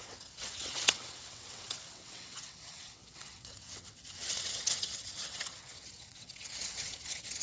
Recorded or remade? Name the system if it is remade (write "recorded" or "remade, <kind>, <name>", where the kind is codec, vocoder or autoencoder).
remade, vocoder, WaveNeXt